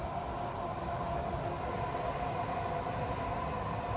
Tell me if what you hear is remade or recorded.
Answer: recorded